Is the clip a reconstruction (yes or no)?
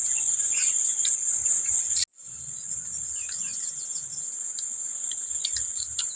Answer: no